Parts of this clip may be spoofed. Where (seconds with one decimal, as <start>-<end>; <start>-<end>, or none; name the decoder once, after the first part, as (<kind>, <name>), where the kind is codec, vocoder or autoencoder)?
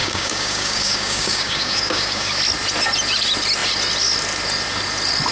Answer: 0.0-2.4 (codec, DAC)